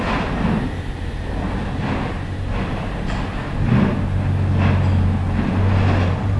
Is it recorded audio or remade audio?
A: recorded